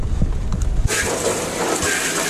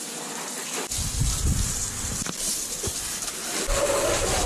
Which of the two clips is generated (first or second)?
second